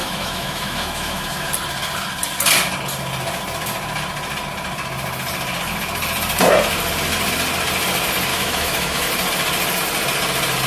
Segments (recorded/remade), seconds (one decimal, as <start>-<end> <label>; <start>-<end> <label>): 0.0-1.5 remade; 1.5-8.3 recorded; 8.3-9.1 remade; 9.1-10.7 recorded